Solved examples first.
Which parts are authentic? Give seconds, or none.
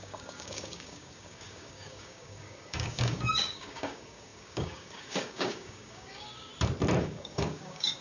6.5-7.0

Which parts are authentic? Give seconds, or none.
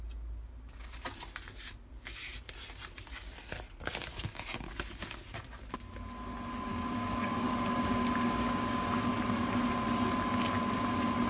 0.0-4.1; 4.7-6.7; 9.1-11.3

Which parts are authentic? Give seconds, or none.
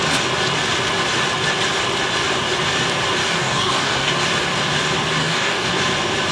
0.0-3.2; 4.1-5.2; 5.7-6.3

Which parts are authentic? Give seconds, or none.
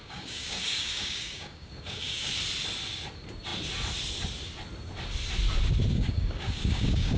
2.3-5.9